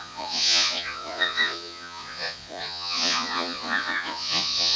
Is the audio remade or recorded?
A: remade